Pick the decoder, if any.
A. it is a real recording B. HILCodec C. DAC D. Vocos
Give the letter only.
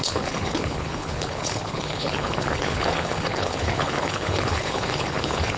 B